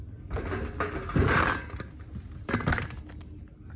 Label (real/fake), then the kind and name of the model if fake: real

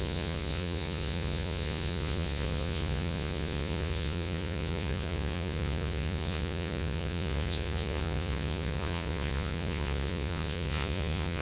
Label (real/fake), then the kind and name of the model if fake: fake, vocoder, Vocos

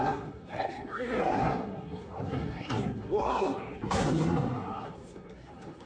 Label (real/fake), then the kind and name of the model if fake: fake, codec, SNAC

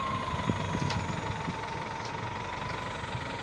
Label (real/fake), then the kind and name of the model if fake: real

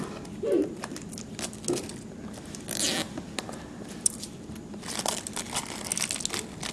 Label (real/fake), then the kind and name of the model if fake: real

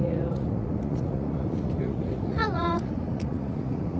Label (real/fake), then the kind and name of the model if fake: fake, vocoder, Vocos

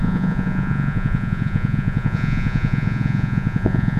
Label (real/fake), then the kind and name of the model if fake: fake, vocoder, Vocos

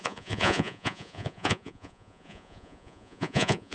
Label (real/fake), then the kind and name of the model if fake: fake, vocoder, Vocos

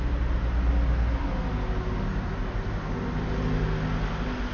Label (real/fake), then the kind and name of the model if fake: real